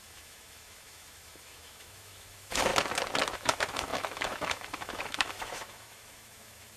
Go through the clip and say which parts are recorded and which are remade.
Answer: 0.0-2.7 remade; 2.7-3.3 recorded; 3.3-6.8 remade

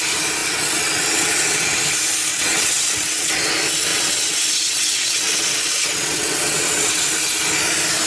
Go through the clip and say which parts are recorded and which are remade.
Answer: 0.0-0.4 recorded; 0.4-1.8 remade; 1.8-2.3 recorded; 2.3-3.5 remade; 3.5-3.9 recorded; 3.9-7.1 remade; 7.1-8.1 recorded

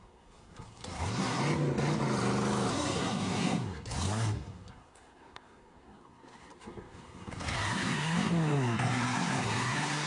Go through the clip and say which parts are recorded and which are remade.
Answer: 0.0-1.4 remade; 1.4-2.7 recorded; 2.7-10.1 remade

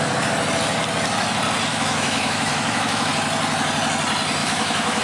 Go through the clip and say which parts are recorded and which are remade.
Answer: 0.0-1.7 recorded; 1.7-3.1 remade; 3.1-4.4 recorded; 4.4-5.0 remade

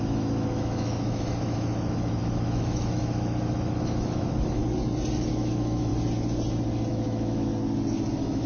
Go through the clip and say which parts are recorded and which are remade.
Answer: 0.0-4.6 remade; 4.6-5.3 recorded; 5.3-5.9 remade; 5.9-6.9 recorded; 6.9-7.5 remade; 7.5-8.1 recorded; 8.1-8.5 remade